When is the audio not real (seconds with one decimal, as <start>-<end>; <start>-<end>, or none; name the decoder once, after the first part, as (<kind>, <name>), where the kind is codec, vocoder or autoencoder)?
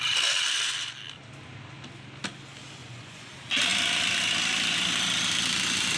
2.8-3.3 (vocoder, Vocos)